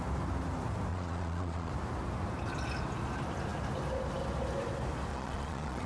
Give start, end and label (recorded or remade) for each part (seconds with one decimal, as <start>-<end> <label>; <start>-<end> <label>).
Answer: 0.0-0.9 recorded; 0.9-1.7 remade; 1.7-5.1 recorded; 5.1-5.9 remade